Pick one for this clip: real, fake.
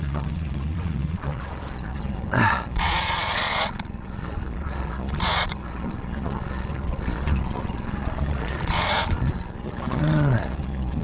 fake